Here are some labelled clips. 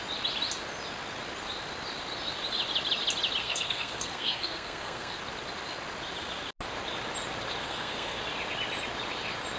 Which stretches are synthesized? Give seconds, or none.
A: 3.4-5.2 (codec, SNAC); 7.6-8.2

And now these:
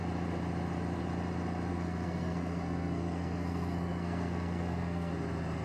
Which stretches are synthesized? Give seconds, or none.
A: 1.7-5.1 (codec, SNAC)

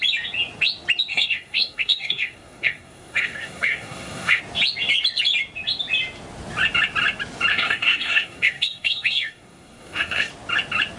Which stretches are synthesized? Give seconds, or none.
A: 1.1-4.4 (codec, SNAC); 7.5-10.3